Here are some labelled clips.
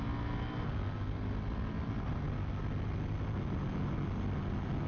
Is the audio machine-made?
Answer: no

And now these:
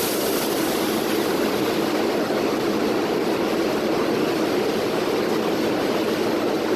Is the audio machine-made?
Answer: no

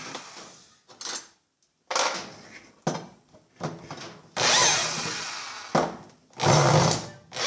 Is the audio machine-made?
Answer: no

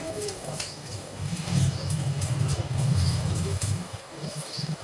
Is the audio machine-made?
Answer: yes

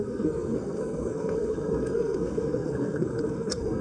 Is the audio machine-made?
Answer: yes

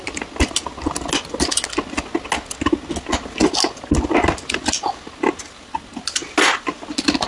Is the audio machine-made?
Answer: no